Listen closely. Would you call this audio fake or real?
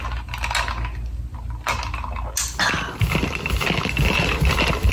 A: real